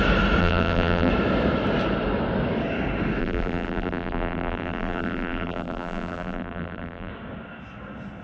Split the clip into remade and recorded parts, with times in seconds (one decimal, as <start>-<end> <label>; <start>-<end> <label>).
0.0-0.4 recorded; 0.4-1.1 remade; 1.1-3.2 recorded; 3.2-7.1 remade; 7.1-8.2 recorded